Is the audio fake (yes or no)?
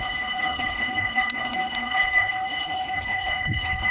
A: yes